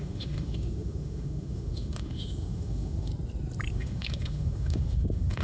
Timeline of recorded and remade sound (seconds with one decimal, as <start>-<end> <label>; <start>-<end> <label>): 0.0-3.1 remade; 3.1-3.7 recorded; 3.7-5.4 remade